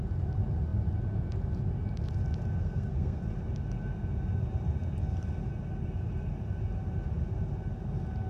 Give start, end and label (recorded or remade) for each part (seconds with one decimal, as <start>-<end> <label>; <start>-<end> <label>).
0.0-2.6 recorded; 2.6-3.2 remade; 3.2-8.3 recorded